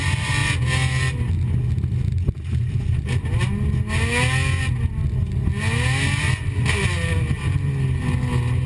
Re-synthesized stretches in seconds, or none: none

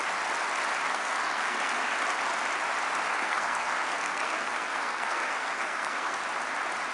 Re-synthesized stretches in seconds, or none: 0.9-2.0 (codec, SNAC); 3.1-6.2

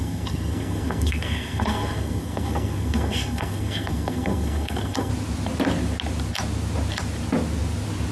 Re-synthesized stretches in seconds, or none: 0.0-5.1 (codec, SNAC)

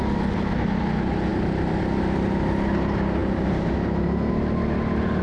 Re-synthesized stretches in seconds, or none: none

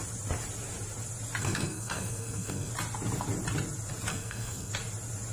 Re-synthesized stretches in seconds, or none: 1.4-2.7 (codec, SNAC); 4.1-4.7

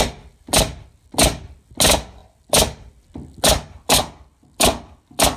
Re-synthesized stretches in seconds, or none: none

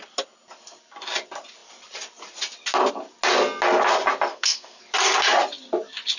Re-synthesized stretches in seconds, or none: 4.3-4.8 (codec, SNAC)